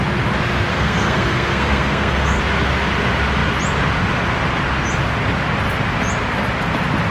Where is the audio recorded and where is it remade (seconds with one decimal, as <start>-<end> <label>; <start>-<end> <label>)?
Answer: 0.0-0.7 recorded; 0.7-2.4 remade; 2.4-7.1 recorded